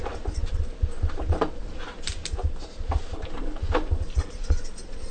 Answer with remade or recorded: recorded